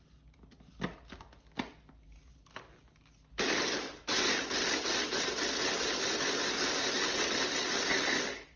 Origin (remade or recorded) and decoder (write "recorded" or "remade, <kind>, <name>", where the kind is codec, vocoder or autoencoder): recorded